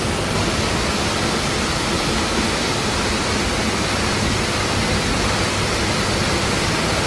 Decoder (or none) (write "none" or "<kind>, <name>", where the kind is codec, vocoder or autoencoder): none